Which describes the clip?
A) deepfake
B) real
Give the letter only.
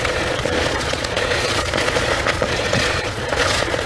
A